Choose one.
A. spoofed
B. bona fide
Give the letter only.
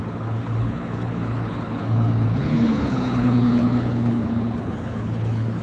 A